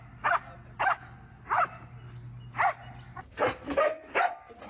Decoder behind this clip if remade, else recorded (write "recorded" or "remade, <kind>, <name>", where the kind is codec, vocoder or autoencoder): recorded